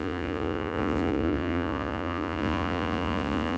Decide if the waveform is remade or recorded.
remade